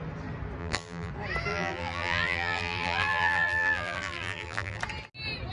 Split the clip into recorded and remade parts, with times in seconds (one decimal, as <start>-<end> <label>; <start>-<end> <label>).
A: 0.0-0.6 recorded; 0.6-1.1 remade; 1.1-1.5 recorded; 1.5-4.8 remade; 4.8-5.5 recorded